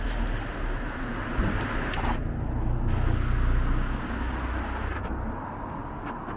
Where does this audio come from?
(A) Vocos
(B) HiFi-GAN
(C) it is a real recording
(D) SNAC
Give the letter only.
C